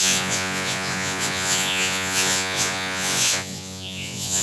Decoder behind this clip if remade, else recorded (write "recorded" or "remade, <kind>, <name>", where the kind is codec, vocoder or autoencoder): remade, vocoder, Vocos